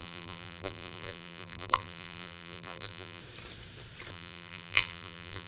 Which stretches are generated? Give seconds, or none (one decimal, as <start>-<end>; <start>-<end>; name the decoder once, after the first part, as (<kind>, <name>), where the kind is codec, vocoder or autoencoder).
0.0-3.2 (vocoder, BigVGAN v2); 4.1-5.5